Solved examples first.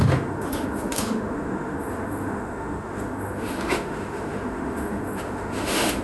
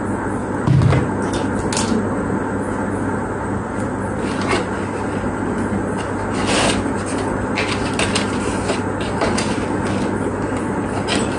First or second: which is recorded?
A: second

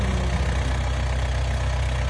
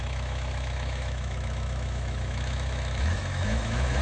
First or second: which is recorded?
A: first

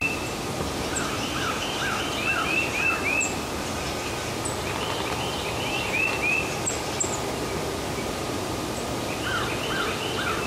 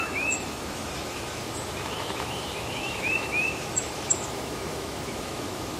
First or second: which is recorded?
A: first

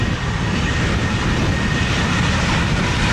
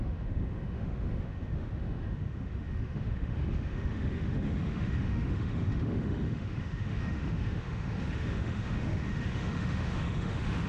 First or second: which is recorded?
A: first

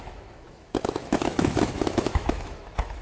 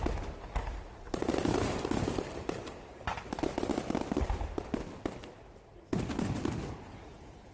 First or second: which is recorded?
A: second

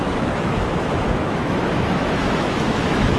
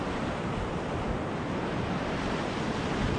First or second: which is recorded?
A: second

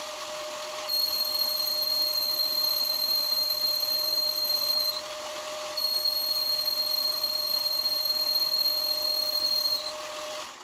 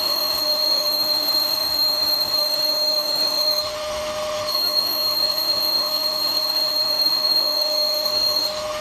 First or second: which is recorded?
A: first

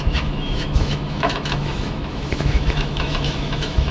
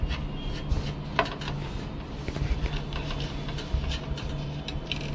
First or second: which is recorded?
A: second